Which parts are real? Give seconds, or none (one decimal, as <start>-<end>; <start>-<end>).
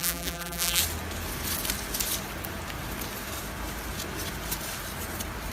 0.8-5.5